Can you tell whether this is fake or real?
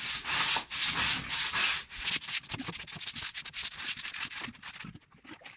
real